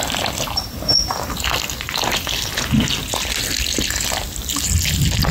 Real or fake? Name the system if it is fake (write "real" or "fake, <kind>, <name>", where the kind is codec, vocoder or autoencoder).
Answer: real